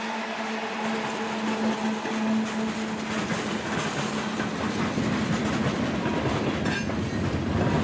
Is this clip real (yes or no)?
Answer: yes